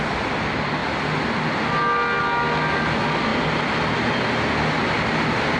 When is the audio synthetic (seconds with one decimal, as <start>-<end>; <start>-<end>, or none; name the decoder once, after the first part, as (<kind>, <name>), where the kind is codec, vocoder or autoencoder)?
none